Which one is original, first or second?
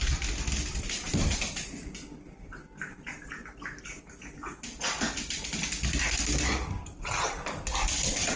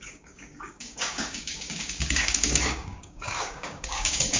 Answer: first